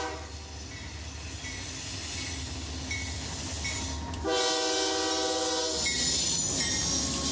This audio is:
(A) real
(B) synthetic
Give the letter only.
A